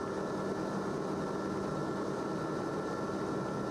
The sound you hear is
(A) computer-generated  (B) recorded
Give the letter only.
B